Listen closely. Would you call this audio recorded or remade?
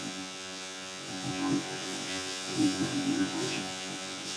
remade